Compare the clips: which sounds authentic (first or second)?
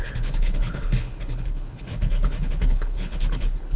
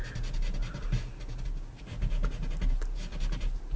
second